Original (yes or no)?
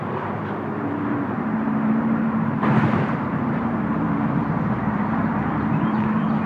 no